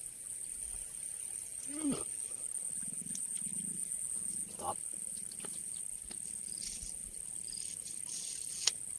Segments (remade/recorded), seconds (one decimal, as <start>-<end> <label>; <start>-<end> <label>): 0.0-9.0 recorded